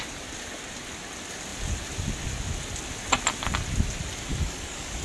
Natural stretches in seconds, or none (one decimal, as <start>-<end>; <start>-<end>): 0.0-4.3